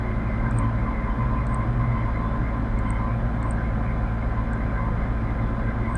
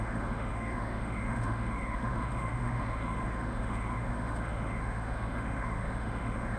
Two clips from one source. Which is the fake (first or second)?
second